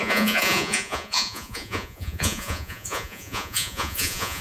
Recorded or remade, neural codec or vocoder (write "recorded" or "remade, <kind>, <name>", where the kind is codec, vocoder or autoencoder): remade, vocoder, Vocos